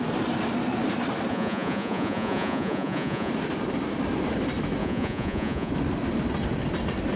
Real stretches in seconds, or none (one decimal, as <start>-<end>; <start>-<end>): 0.0-1.3; 3.3-4.8; 5.7-7.2